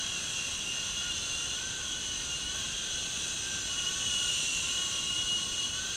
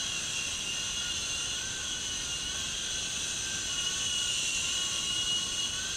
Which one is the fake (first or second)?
first